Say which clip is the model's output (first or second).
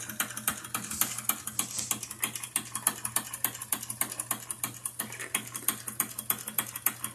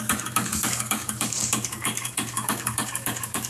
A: second